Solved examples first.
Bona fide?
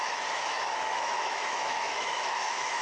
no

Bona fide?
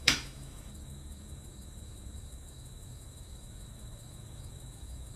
no